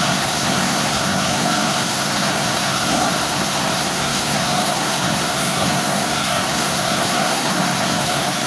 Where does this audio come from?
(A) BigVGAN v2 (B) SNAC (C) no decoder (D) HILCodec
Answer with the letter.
B